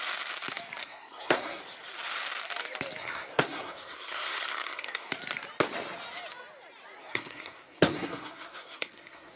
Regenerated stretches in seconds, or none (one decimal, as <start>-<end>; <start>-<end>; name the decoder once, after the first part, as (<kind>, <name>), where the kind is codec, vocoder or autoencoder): 0.8-1.6 (codec, SNAC); 3.0-5.1; 7.0-9.4